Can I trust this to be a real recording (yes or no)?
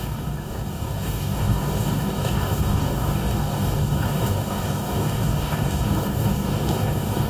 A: no